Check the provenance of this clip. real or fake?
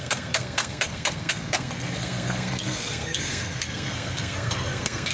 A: fake